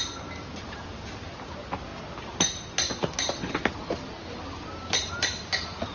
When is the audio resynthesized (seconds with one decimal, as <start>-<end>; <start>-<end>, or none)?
none